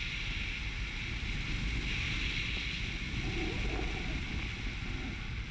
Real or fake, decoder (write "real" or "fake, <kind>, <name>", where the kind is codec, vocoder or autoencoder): real